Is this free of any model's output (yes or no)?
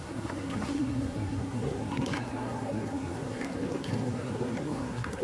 no